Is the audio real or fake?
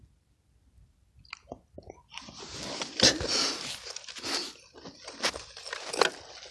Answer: real